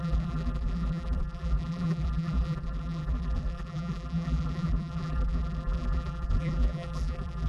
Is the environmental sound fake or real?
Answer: fake